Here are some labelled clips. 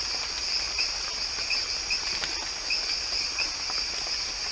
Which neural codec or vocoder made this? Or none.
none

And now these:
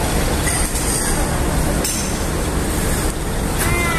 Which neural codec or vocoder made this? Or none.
none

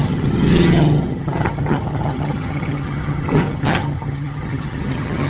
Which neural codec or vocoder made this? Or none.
vocoder, HiFi-GAN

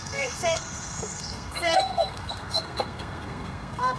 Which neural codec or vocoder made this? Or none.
codec, SNAC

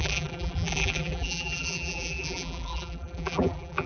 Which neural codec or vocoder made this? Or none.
vocoder, BigVGAN v2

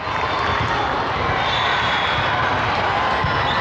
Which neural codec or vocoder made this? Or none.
none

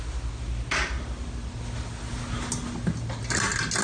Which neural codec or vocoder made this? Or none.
none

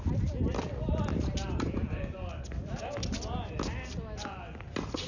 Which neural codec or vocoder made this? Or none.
none